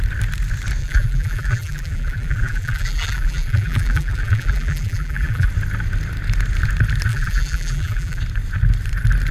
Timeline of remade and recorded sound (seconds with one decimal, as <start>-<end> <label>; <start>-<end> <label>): 0.0-0.8 recorded; 0.8-5.5 remade; 5.5-7.1 recorded; 7.1-8.2 remade; 8.2-9.3 recorded